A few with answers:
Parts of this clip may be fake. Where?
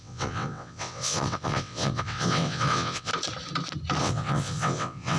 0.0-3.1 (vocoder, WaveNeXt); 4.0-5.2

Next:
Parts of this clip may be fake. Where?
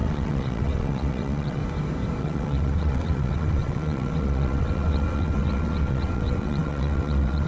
0.0-1.6 (vocoder, WaveNeXt); 2.2-7.5